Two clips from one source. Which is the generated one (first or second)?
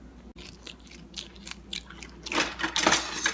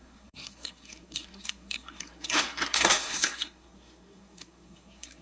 second